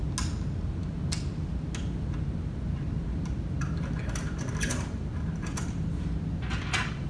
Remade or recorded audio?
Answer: recorded